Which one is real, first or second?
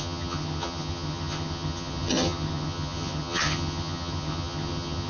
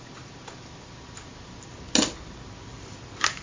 second